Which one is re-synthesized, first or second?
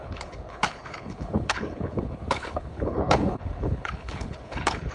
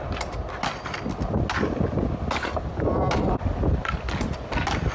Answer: first